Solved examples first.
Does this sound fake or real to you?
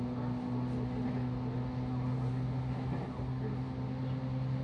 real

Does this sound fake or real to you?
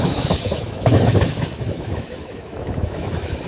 fake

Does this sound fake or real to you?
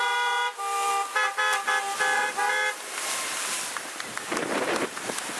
real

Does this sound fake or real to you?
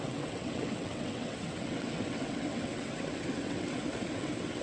fake